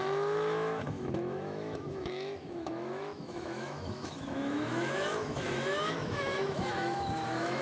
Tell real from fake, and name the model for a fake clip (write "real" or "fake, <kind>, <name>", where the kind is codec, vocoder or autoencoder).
fake, autoencoder, DAC-VAE